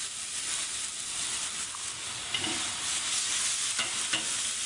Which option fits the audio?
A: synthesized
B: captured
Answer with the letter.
B